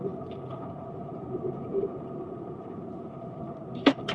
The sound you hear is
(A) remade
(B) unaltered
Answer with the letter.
A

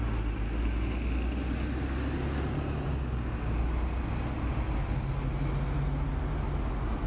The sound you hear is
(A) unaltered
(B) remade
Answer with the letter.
A